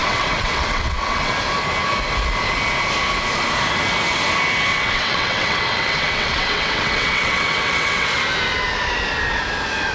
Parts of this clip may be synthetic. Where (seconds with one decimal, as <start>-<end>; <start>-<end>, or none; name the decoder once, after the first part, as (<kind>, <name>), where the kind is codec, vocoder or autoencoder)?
0.0-1.3 (vocoder, WaveNeXt); 4.7-8.1